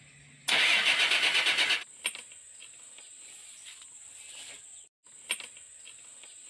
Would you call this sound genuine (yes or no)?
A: yes